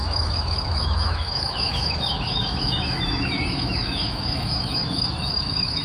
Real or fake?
fake